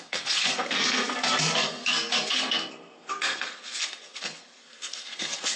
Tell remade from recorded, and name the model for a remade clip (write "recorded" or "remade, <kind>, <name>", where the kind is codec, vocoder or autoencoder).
remade, codec, SNAC